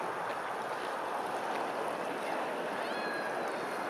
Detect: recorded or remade recorded